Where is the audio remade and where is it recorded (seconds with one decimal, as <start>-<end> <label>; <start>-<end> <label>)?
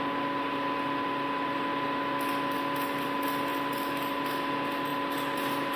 0.0-5.8 recorded